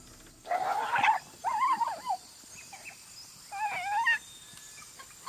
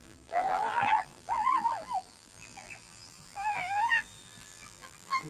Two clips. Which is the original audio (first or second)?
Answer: first